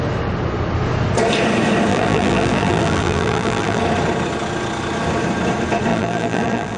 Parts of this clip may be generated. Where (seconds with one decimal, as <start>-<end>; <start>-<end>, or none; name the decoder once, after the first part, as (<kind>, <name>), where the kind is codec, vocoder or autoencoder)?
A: 1.9-3.8 (vocoder, BigVGAN v2); 5.9-6.8